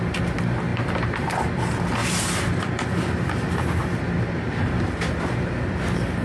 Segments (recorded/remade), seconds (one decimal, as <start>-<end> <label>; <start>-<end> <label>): 0.0-0.7 recorded; 0.7-1.6 remade; 1.6-2.0 recorded; 2.0-5.7 remade; 5.7-6.2 recorded